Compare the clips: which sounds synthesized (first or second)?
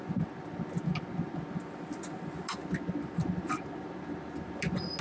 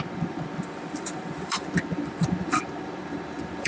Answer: second